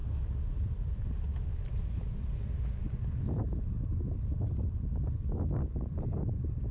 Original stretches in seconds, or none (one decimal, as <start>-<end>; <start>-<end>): 0.0-6.7